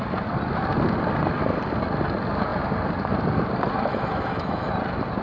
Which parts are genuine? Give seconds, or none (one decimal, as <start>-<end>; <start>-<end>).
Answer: 0.0-3.9; 4.7-5.2